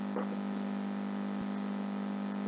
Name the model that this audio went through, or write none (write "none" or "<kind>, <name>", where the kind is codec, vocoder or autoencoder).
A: none